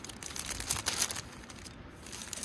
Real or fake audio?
real